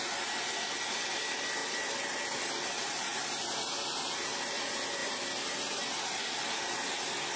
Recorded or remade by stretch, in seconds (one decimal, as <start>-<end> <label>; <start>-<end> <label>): 0.0-1.6 recorded; 1.6-2.2 remade; 2.2-5.0 recorded; 5.0-5.9 remade; 5.9-7.4 recorded